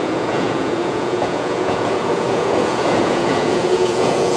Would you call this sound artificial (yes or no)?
yes